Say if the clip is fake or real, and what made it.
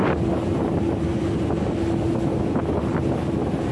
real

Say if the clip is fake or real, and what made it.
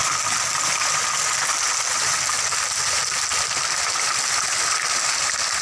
real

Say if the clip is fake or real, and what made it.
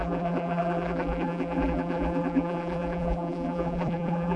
fake, vocoder, BigVGAN v2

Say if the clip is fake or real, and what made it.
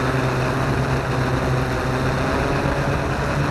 real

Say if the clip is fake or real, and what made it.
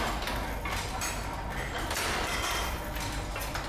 real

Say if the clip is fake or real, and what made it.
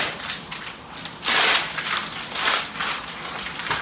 fake, vocoder, BigVGAN v2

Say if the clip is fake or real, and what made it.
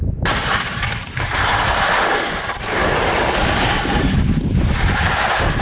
real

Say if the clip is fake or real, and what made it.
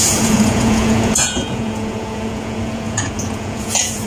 fake, vocoder, Vocos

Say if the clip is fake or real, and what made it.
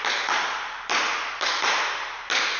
real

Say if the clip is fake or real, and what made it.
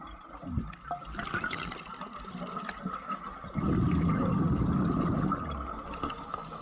real